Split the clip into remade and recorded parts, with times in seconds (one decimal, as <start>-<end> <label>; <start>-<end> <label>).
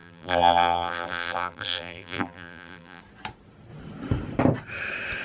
0.0-3.0 remade; 3.0-5.2 recorded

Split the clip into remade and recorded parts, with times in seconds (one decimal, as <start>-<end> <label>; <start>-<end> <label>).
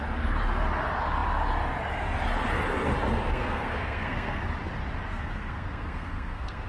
0.0-3.3 recorded; 3.3-4.4 remade; 4.4-5.1 recorded; 5.1-6.7 remade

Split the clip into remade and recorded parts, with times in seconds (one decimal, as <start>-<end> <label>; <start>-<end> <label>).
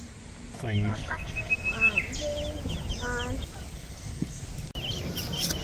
0.0-0.9 recorded; 0.9-1.5 remade; 1.5-3.7 recorded; 3.7-4.4 remade; 4.4-5.6 recorded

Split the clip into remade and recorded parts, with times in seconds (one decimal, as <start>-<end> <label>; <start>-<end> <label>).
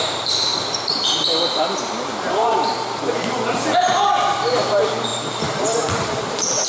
0.0-0.5 remade; 0.5-1.7 recorded; 1.7-2.7 remade; 2.7-3.5 recorded; 3.5-6.7 remade